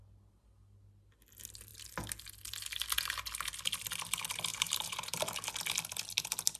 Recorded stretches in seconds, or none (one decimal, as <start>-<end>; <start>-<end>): 0.0-4.5; 5.2-6.6